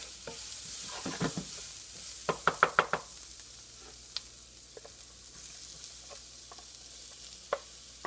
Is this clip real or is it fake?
real